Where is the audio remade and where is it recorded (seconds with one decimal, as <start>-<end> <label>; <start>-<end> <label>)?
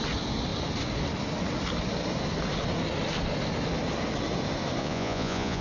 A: 0.0-4.8 recorded; 4.8-5.6 remade